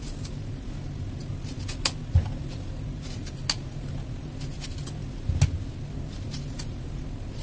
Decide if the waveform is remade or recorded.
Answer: recorded